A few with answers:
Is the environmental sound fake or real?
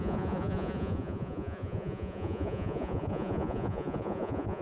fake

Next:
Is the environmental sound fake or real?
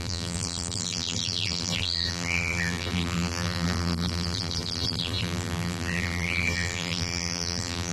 fake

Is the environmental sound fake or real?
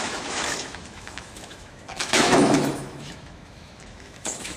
fake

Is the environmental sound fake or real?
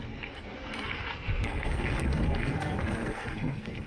fake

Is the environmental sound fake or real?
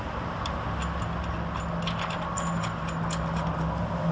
real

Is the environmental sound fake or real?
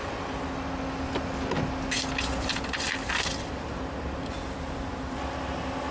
real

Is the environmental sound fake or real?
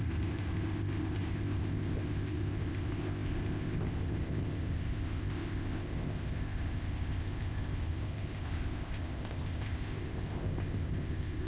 fake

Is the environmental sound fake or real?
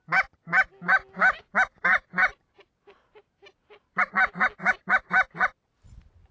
real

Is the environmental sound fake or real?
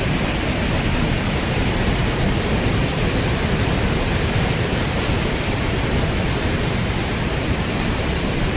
fake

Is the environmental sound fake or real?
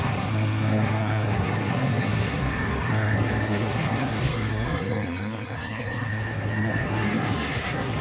fake